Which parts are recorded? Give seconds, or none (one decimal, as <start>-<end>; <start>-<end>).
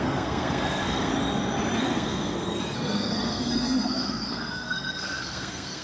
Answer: 1.1-1.8